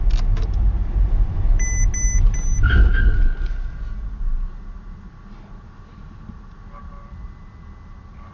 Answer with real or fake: real